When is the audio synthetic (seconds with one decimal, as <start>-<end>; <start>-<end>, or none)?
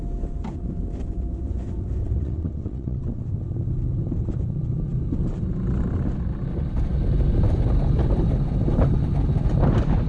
2.0-3.2